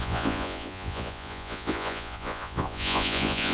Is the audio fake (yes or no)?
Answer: yes